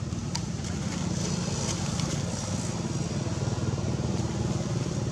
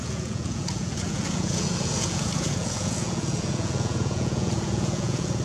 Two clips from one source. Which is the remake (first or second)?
second